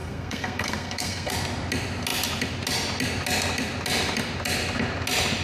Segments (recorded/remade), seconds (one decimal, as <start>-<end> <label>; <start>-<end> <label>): 0.0-1.3 remade; 1.3-5.4 recorded

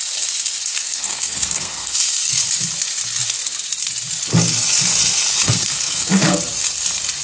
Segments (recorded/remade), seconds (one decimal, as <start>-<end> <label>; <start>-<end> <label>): 0.0-0.6 recorded; 0.6-2.4 remade; 2.4-5.3 recorded; 5.3-6.4 remade; 6.4-7.2 recorded

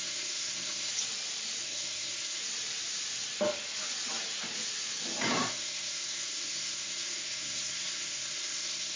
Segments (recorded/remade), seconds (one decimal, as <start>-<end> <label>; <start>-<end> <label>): 0.0-0.9 remade; 0.9-1.6 recorded; 1.6-2.4 remade; 2.4-5.5 recorded; 5.5-9.0 remade

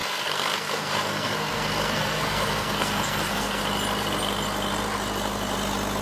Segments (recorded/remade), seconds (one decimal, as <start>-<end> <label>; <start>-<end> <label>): 0.0-3.6 remade; 3.6-6.0 recorded